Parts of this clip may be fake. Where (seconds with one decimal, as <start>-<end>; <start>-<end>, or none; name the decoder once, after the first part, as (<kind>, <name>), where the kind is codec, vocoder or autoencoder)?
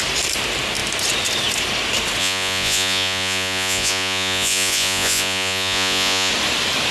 2.2-6.3 (vocoder, Vocos)